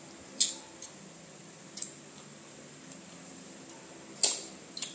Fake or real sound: real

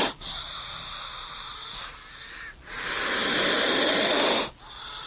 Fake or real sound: real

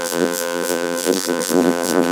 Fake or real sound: fake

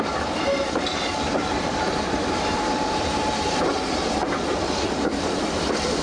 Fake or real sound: fake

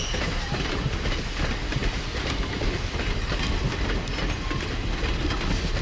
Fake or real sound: real